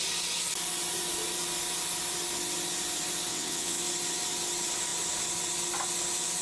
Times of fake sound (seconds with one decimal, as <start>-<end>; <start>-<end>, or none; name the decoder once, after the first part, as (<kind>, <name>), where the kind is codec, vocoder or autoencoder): 3.3-3.8 (vocoder, WaveNeXt)